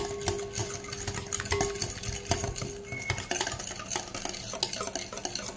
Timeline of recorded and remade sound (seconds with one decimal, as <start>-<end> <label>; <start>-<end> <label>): 0.0-5.6 recorded